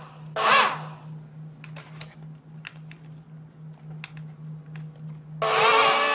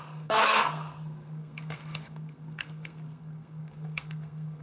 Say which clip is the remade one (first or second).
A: second